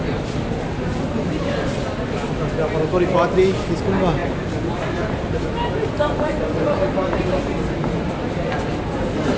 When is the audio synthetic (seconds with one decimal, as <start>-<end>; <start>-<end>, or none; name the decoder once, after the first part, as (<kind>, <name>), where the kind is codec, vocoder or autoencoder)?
none